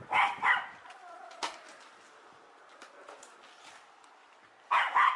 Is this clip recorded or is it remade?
recorded